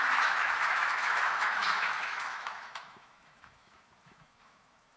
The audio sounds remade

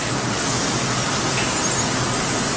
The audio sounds recorded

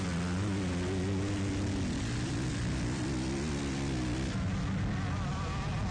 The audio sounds recorded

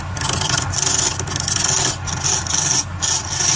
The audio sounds recorded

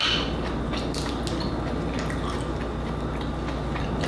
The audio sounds recorded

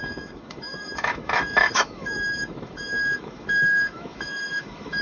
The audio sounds remade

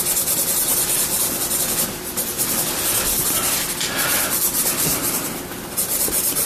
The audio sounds recorded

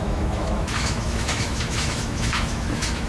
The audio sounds remade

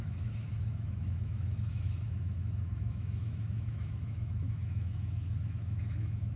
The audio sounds remade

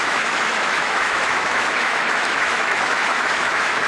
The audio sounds remade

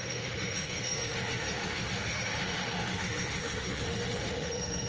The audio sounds remade